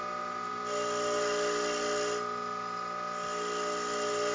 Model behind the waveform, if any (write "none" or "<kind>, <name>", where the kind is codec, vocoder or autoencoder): none